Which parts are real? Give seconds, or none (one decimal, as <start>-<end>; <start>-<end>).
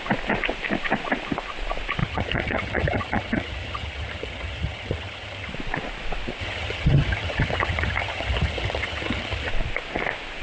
0.0-2.0; 5.5-6.4; 9.5-10.4